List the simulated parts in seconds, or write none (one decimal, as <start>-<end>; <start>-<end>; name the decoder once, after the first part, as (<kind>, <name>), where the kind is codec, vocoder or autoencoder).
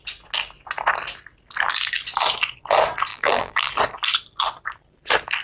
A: 3.1-3.7 (vocoder, BigVGAN v2)